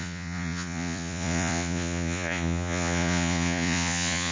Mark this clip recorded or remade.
remade